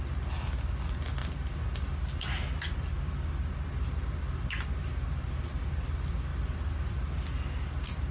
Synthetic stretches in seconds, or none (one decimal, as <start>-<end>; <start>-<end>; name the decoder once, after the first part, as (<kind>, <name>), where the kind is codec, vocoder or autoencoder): none